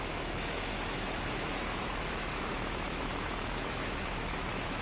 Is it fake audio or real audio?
fake